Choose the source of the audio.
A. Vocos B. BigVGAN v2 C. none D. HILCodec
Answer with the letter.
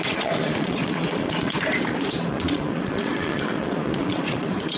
A